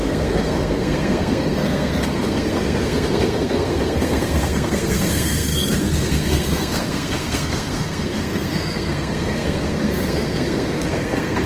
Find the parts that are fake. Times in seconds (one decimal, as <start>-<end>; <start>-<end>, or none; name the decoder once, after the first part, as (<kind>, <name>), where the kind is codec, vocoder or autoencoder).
0.0-11.5 (codec, SNAC)